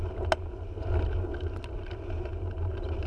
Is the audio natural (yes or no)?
yes